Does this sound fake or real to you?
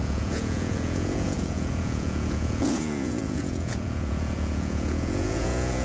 fake